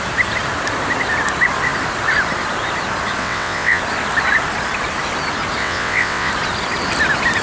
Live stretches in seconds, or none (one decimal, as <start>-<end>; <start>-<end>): 0.0-3.2; 3.8-5.6; 6.3-7.4